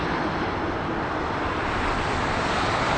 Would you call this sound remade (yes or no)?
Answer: no